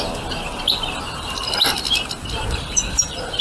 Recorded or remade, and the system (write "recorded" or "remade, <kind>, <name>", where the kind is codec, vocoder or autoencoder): remade, vocoder, BigVGAN v2